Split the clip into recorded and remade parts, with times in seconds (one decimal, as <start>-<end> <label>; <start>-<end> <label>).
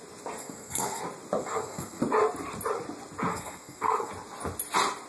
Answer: 0.0-0.4 recorded; 0.4-1.0 remade; 1.0-1.4 recorded; 1.4-2.0 remade; 2.0-3.3 recorded; 3.3-4.1 remade; 4.1-5.1 recorded